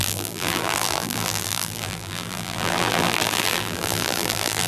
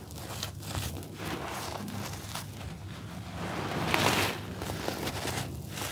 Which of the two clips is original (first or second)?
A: second